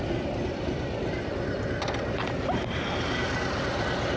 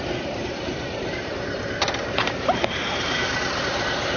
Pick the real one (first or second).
first